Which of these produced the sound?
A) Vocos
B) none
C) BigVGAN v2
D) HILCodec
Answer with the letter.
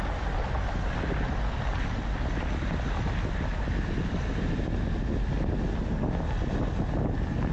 B